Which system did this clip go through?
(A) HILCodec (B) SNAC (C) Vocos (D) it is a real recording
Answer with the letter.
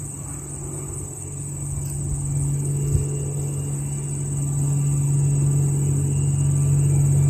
D